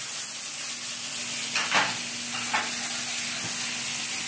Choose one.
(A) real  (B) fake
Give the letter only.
A